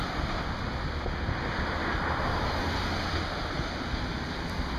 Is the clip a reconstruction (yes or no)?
no